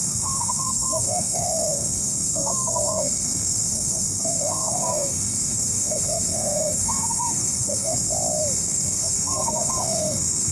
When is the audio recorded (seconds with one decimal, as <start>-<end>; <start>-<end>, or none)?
8.1-8.6